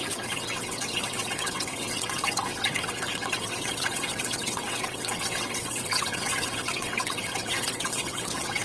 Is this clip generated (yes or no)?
yes